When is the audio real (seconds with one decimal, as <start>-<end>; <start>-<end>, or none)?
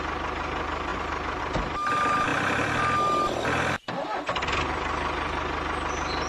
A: 0.0-6.3